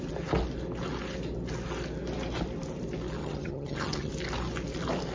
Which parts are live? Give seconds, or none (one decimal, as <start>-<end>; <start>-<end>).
0.0-3.2; 4.1-5.1